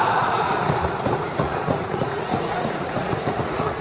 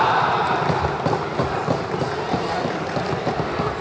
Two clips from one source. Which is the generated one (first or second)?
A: first